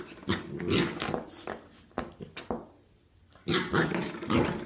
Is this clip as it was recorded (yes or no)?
yes